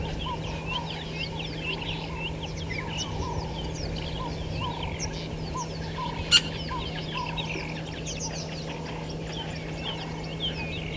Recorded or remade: recorded